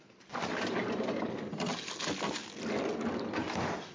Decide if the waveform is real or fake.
fake